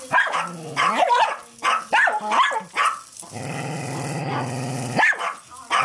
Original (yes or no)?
yes